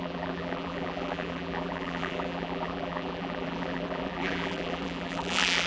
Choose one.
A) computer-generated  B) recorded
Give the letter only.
A